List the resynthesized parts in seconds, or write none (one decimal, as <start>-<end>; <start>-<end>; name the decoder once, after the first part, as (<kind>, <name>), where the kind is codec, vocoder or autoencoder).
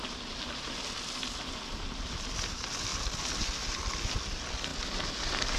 none